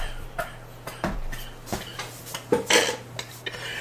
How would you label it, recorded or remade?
recorded